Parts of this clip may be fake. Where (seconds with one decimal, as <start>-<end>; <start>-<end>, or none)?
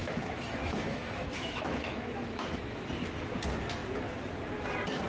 0.0-2.9